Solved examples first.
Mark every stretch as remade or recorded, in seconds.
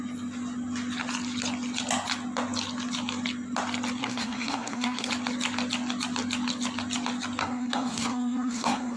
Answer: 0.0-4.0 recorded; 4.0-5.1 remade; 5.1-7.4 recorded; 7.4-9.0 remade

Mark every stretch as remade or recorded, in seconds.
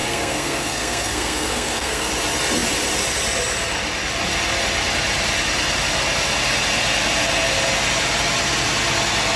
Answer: 0.0-2.1 remade; 2.1-9.4 recorded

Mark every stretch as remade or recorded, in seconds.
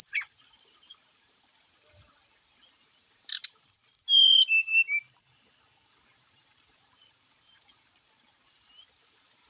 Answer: 0.0-3.8 remade; 3.8-6.1 recorded; 6.1-9.5 remade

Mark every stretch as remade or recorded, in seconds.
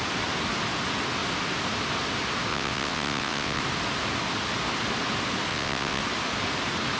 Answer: 0.0-2.5 recorded; 2.5-3.6 remade; 3.6-5.5 recorded; 5.5-6.0 remade; 6.0-7.0 recorded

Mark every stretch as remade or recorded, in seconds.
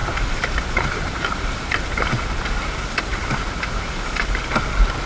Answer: 0.0-2.4 remade; 2.4-3.1 recorded; 3.1-4.5 remade; 4.5-5.1 recorded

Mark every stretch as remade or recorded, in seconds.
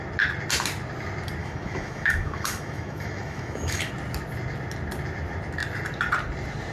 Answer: 0.0-1.4 recorded; 1.4-3.9 remade; 3.9-6.7 recorded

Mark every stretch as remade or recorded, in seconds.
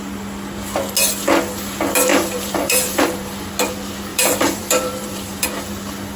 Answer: 0.0-2.1 recorded; 2.1-3.5 remade; 3.5-4.1 recorded; 4.1-5.5 remade; 5.5-6.2 recorded